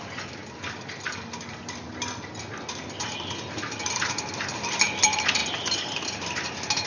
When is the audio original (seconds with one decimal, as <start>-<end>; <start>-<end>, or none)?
0.0-6.9